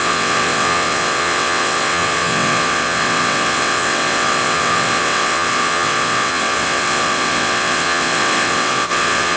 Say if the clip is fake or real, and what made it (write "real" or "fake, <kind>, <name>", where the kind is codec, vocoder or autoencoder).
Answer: fake, vocoder, WaveNeXt